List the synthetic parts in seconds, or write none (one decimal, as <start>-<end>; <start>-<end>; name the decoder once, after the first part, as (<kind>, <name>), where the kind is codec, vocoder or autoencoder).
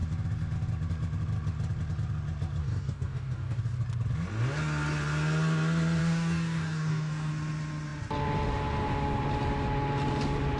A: 2.6-3.6 (codec, DAC); 6.0-7.3